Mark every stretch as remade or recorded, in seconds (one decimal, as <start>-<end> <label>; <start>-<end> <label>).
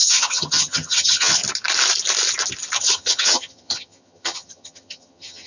0.0-1.4 remade; 1.4-2.8 recorded; 2.8-5.5 remade